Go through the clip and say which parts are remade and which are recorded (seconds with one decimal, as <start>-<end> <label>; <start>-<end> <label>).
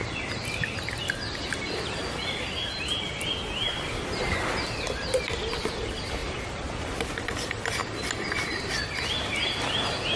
0.0-6.2 recorded; 6.2-7.1 remade; 7.1-7.8 recorded; 7.8-8.6 remade; 8.6-10.2 recorded